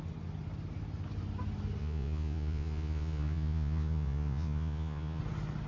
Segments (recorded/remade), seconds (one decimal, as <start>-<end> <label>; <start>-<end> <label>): 0.0-1.8 recorded; 1.8-5.2 remade; 5.2-5.7 recorded